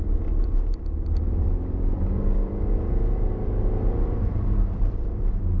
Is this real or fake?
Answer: fake